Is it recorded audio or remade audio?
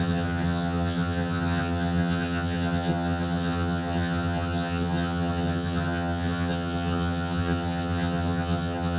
remade